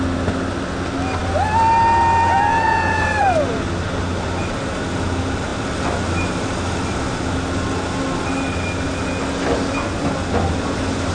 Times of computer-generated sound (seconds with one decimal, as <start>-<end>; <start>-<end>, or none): none